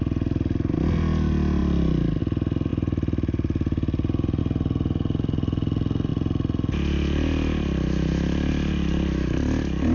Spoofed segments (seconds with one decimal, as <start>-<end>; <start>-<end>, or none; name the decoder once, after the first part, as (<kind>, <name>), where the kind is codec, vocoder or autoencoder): none